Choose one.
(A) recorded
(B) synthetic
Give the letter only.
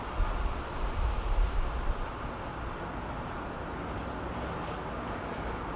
A